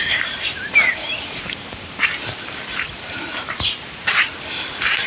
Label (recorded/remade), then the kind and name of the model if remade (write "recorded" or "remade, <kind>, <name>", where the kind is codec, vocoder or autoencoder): remade, vocoder, BigVGAN v2